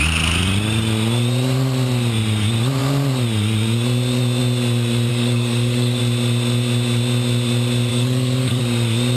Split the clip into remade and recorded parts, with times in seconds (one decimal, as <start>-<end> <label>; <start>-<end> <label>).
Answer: 0.0-5.1 recorded; 5.1-6.0 remade; 6.0-7.9 recorded; 7.9-8.6 remade; 8.6-9.2 recorded